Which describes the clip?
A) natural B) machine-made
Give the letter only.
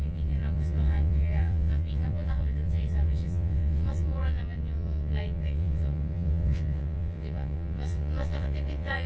B